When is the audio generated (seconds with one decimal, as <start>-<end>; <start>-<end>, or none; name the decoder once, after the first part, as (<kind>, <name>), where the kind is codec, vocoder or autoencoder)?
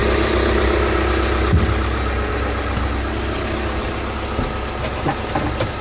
none